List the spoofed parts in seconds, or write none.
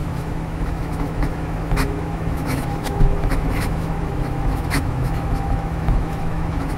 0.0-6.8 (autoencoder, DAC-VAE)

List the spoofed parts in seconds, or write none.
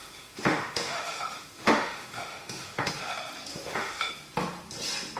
0.0-2.9 (autoencoder, DAC-VAE); 3.5-4.1